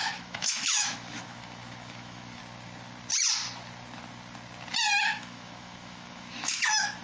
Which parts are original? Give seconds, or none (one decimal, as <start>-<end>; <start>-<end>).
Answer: 2.4-5.0